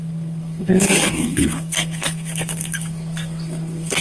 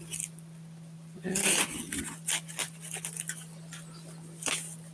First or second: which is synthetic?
first